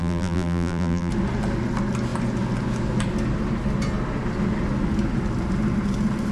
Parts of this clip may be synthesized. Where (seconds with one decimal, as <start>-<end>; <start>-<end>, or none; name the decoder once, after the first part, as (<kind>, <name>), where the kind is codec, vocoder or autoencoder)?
0.0-1.1 (vocoder, BigVGAN v2)